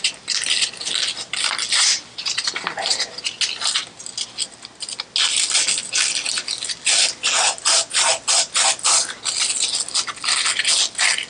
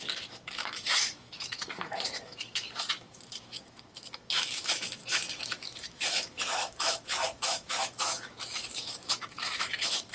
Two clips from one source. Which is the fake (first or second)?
second